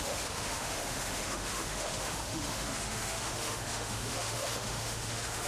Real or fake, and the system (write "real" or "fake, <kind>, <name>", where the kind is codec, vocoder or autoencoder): fake, autoencoder, DAC-VAE